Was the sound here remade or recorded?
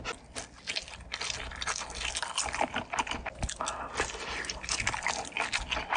recorded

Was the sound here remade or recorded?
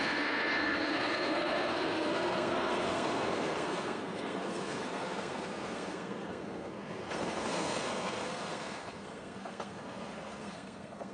remade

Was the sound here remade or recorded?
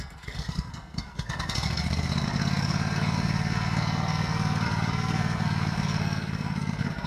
remade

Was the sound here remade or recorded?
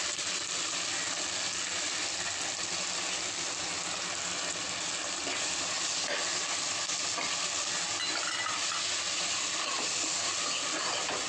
recorded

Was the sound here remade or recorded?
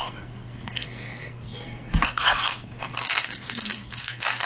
remade